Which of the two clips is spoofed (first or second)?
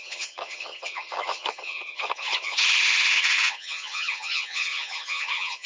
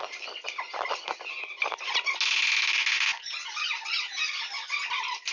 first